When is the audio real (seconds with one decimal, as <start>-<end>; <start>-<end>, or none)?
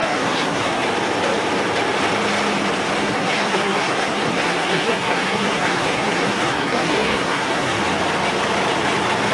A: 0.9-3.0; 7.8-9.3